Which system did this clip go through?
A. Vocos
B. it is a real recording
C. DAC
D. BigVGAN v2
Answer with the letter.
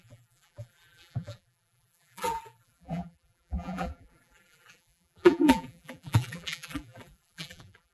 D